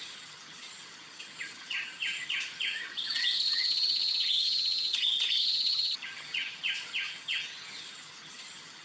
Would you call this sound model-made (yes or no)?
yes